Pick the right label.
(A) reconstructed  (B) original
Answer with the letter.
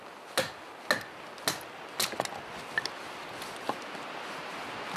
B